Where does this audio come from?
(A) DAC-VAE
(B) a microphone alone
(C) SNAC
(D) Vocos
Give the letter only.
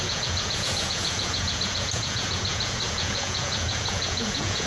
D